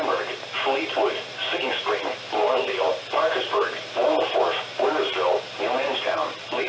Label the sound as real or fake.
fake